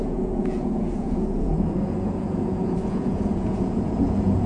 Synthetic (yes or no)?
yes